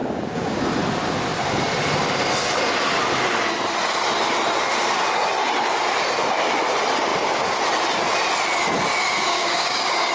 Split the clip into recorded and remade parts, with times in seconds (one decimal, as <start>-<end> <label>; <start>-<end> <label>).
0.0-0.6 remade; 0.6-9.3 recorded; 9.3-10.1 remade